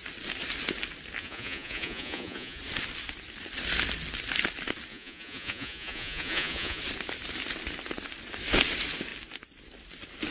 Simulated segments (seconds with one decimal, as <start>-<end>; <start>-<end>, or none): 1.2-2.6; 4.9-6.8